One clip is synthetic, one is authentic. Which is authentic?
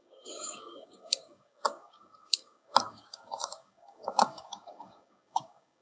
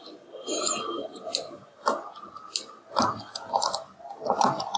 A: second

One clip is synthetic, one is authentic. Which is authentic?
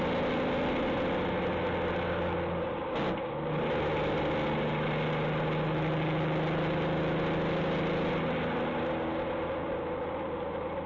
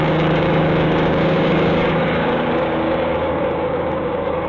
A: first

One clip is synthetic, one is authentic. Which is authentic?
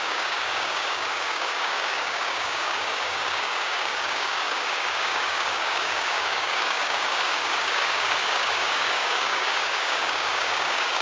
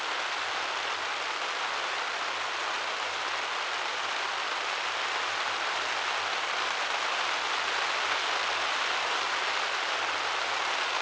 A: second